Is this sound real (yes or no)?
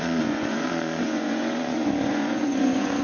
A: no